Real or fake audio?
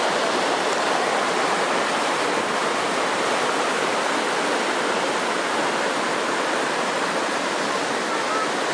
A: real